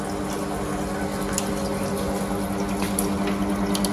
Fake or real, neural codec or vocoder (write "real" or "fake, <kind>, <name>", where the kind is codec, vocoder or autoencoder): real